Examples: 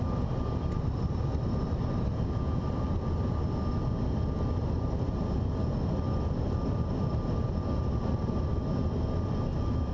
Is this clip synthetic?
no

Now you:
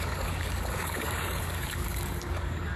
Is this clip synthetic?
yes